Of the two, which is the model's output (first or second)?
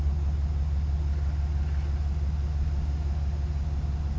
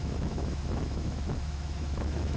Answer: second